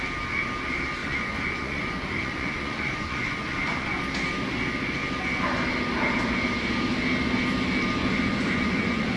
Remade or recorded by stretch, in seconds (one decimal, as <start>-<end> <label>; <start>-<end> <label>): 0.0-1.0 recorded; 1.0-4.0 remade; 4.0-8.0 recorded; 8.0-9.2 remade